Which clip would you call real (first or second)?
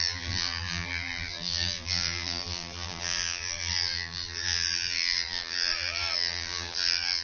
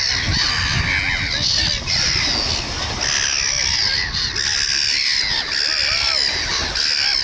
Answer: second